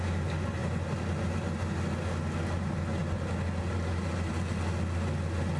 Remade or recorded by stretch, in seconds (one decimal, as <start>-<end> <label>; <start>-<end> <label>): 0.0-5.6 recorded

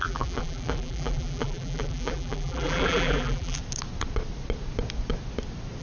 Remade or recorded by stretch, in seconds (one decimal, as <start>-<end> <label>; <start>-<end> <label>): 0.0-3.6 remade; 3.6-5.8 recorded

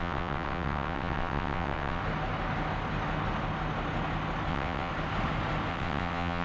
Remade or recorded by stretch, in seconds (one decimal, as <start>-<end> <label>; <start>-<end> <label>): 0.0-2.0 remade; 2.0-4.5 recorded; 4.5-4.9 remade; 4.9-5.7 recorded; 5.7-6.4 remade

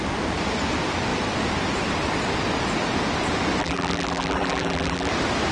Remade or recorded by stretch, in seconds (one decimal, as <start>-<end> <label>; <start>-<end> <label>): 0.0-3.6 recorded; 3.6-5.1 remade; 5.1-5.5 recorded

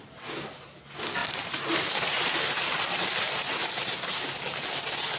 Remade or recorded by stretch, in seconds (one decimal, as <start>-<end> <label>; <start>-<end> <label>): 0.0-1.2 recorded; 1.2-4.3 remade; 4.3-5.2 recorded